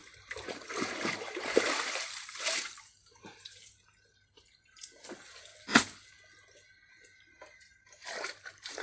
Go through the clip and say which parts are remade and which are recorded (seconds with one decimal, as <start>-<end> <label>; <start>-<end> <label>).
0.0-0.8 recorded; 0.8-5.5 remade; 5.5-7.3 recorded; 7.3-8.8 remade